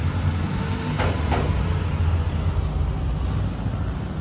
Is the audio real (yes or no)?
yes